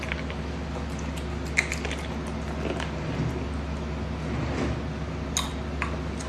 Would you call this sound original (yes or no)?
yes